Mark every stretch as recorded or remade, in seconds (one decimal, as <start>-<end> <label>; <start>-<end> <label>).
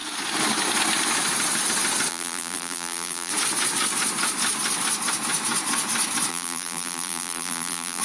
0.0-2.1 recorded; 2.1-3.3 remade; 3.3-6.3 recorded; 6.3-8.0 remade